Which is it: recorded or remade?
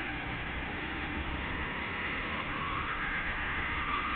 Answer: remade